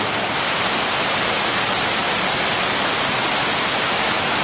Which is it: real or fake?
fake